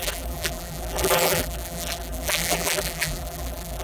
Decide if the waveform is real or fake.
fake